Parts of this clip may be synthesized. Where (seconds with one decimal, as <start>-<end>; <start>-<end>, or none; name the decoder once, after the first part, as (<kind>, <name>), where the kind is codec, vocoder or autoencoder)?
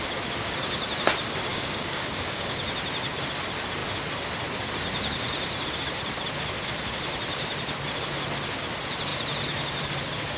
1.5-2.6 (codec, DAC)